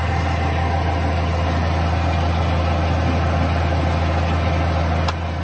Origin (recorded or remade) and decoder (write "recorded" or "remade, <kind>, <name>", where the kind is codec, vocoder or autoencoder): recorded